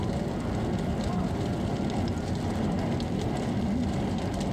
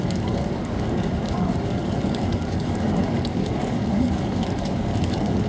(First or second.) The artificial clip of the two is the second